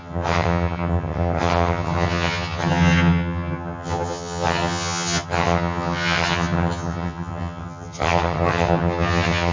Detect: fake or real fake